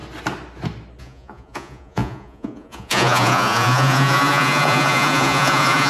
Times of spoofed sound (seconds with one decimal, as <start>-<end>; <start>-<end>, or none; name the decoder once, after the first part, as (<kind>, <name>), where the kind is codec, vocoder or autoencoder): 1.0-5.9 (vocoder, Vocos)